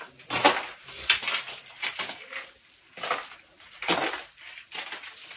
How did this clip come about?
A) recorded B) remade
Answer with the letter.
A